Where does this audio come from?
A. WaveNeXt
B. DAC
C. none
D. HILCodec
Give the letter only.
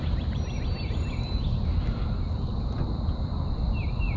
C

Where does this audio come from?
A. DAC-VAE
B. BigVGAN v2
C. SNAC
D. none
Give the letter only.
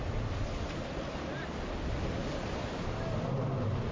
D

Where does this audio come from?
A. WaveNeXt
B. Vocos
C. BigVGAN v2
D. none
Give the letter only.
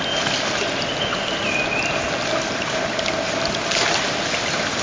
D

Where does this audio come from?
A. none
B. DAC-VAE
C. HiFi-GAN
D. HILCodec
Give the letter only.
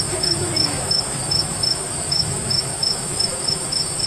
B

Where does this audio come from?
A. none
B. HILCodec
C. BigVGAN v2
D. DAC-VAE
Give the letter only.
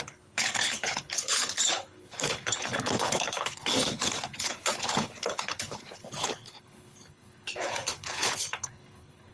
B